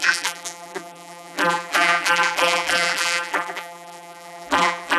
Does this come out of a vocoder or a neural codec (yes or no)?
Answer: yes